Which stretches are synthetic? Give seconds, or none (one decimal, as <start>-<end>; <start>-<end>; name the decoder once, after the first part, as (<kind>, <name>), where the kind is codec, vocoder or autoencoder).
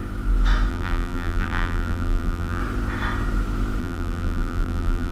0.7-2.6 (vocoder, BigVGAN v2); 3.8-5.1